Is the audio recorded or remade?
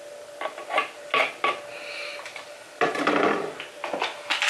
recorded